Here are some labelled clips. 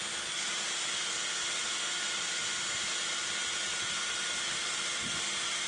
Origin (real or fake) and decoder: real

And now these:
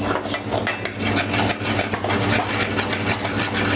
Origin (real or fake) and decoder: real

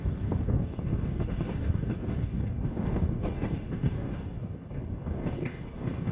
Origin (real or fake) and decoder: fake, codec, DAC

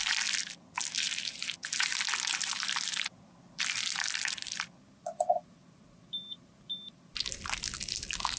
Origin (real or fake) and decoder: real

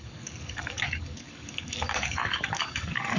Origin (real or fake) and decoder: fake, codec, DAC